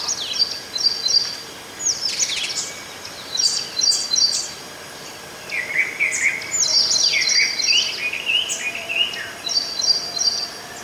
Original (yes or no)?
yes